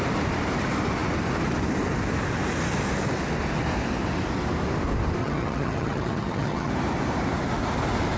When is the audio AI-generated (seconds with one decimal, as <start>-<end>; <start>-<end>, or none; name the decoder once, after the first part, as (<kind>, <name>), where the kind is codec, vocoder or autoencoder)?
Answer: 5.2-6.7 (vocoder, HiFi-GAN)